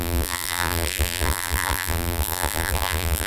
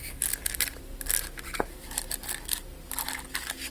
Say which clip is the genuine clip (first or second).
second